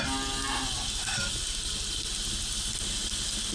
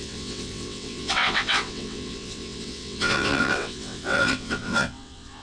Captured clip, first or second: first